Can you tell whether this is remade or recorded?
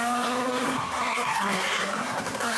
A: remade